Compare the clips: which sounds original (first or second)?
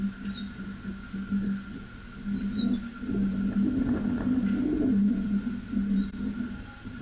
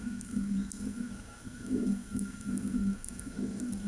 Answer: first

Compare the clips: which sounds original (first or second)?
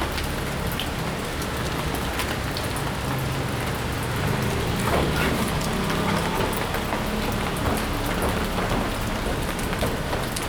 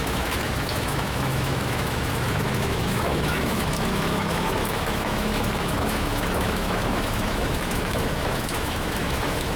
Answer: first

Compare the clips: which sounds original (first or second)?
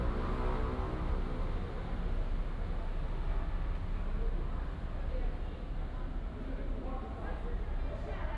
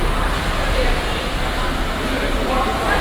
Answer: first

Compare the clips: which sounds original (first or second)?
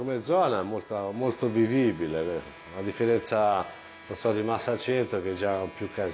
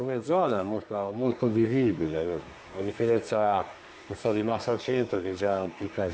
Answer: first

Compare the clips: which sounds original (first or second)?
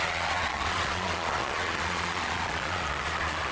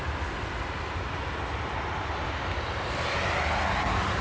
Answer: second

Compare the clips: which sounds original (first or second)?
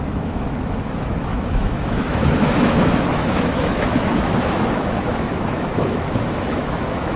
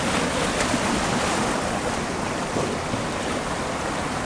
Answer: second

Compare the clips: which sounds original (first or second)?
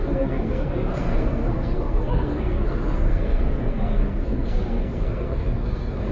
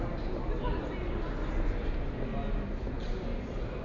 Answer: second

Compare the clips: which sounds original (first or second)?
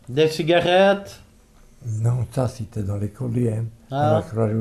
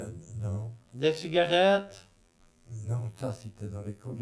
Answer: first